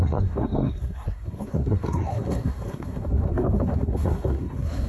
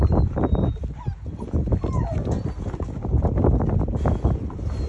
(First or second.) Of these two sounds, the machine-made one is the first